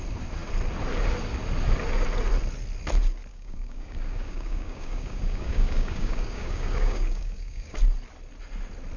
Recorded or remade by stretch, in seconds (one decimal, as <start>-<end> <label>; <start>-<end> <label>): 0.0-3.3 recorded; 3.3-7.8 remade; 7.8-9.0 recorded